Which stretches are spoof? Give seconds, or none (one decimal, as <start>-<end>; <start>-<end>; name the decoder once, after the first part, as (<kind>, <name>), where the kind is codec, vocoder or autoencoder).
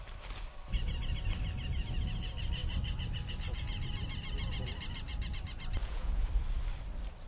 5.8-6.3 (vocoder, Vocos)